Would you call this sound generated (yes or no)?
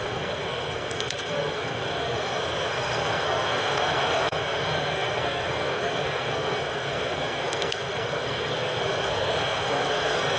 yes